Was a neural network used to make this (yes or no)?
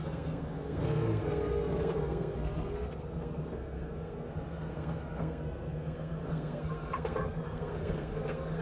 yes